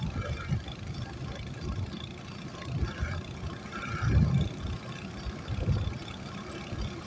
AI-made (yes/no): no